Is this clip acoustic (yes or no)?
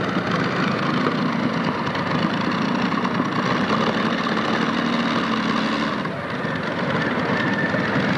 yes